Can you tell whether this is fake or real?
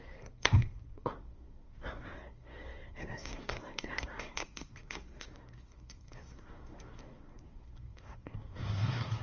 fake